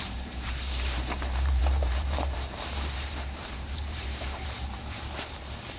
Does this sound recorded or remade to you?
remade